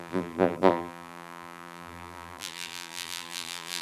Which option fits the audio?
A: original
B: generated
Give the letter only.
B